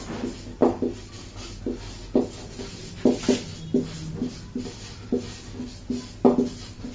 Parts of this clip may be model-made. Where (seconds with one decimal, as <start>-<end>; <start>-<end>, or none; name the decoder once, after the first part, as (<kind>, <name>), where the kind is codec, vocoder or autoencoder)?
none